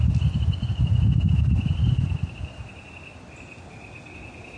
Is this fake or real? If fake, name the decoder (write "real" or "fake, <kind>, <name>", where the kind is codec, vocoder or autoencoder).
real